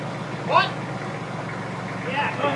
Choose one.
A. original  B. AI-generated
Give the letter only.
A